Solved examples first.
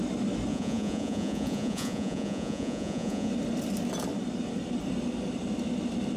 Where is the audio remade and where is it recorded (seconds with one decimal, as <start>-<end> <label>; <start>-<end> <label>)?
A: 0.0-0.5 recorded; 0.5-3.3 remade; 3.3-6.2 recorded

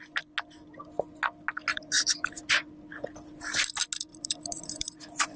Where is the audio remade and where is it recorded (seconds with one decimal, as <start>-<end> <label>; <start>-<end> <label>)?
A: 0.0-1.7 recorded; 1.7-2.4 remade; 2.4-4.1 recorded; 4.1-5.4 remade

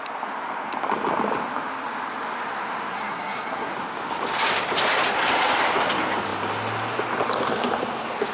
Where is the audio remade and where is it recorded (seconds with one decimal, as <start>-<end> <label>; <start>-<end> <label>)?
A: 0.0-2.9 recorded; 2.9-3.7 remade; 3.7-8.3 recorded

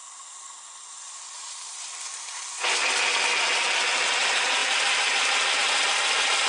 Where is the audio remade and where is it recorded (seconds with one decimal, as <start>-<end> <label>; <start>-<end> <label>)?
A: 0.0-3.0 remade; 3.0-6.5 recorded